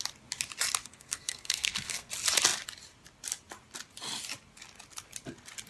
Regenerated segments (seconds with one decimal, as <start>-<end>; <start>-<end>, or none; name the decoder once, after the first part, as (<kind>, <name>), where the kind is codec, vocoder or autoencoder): 0.8-2.1 (codec, SNAC)